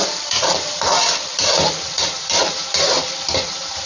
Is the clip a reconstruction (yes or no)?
yes